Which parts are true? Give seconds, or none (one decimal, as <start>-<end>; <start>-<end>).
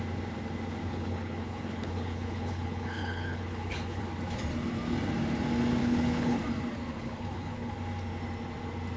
0.0-0.8; 4.0-5.8; 6.4-6.9; 7.7-9.0